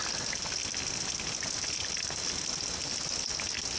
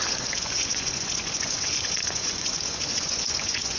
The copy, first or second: second